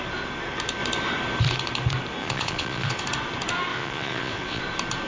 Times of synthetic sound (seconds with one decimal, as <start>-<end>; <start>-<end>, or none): 2.2-3.0; 3.7-4.6